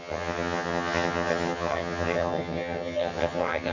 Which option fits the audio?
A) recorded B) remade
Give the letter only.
B